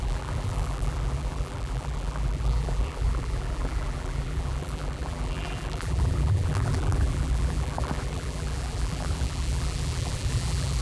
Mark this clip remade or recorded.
remade